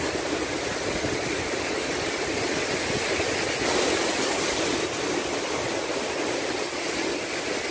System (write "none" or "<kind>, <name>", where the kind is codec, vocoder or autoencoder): none